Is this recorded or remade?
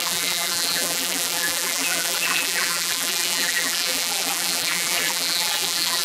remade